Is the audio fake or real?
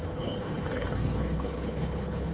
fake